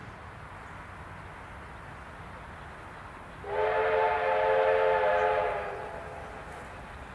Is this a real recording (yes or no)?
yes